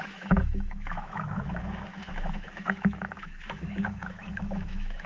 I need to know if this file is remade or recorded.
remade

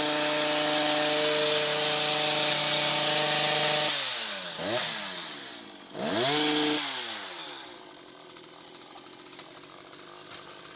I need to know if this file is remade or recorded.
recorded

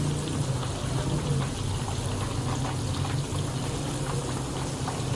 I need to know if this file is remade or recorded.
recorded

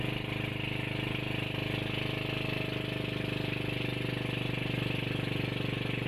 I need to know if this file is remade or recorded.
recorded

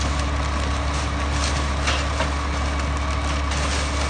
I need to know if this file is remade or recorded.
recorded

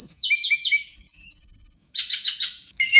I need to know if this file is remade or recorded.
remade